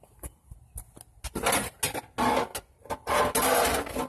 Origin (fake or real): real